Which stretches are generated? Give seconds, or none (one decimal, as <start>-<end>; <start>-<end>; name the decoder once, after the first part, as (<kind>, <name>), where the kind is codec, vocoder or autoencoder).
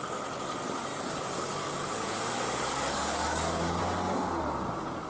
0.9-3.8 (codec, DAC)